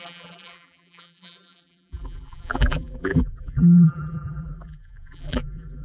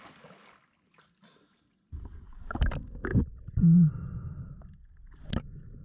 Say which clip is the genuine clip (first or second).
second